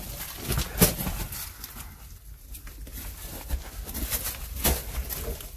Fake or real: real